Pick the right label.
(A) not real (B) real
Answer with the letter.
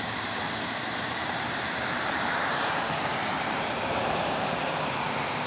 A